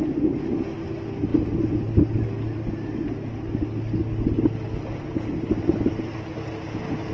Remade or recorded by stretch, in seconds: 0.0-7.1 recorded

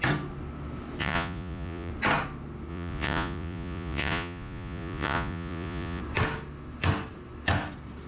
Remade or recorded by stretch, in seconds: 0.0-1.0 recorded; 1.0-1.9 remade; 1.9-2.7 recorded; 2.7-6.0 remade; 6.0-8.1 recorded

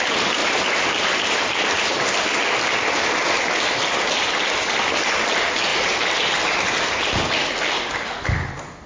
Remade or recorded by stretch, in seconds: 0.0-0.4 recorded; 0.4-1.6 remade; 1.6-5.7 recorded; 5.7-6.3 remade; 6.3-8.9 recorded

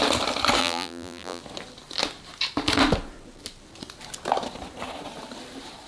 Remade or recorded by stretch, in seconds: 0.0-0.6 recorded; 0.6-1.4 remade; 1.4-5.9 recorded

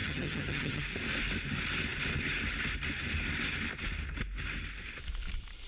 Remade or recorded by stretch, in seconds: 0.0-0.8 remade; 0.8-5.7 recorded

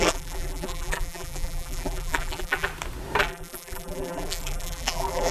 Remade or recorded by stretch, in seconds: 0.0-2.7 remade; 2.7-3.2 recorded; 3.2-5.3 remade